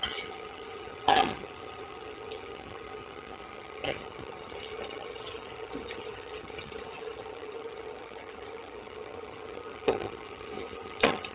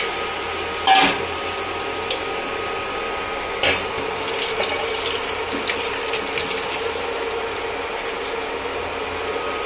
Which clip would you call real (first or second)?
second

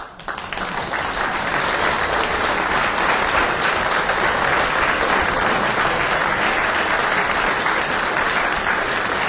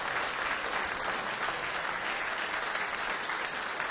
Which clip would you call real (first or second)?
second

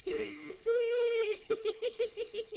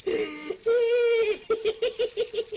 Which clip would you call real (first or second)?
second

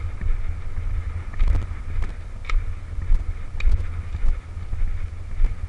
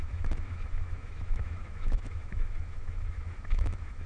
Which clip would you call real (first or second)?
first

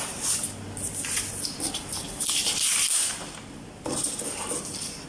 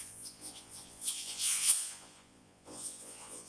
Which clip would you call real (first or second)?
first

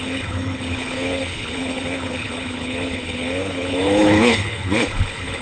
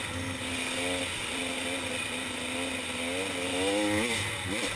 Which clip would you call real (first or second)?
second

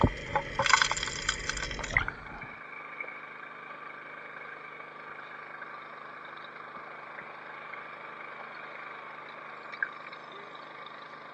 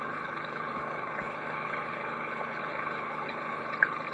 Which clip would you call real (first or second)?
first